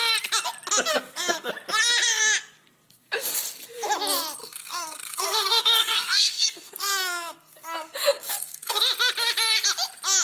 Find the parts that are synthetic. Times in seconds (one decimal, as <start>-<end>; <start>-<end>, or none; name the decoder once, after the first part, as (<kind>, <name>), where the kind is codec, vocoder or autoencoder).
0.9-1.5 (codec, SNAC); 4.4-8.8